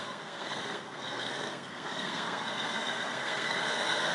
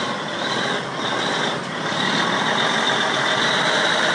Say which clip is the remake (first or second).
first